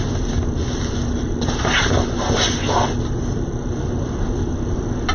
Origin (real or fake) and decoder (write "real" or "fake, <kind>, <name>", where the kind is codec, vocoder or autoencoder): real